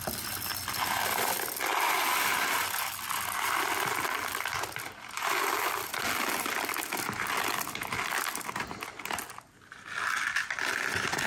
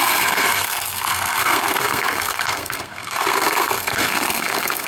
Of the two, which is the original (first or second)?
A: first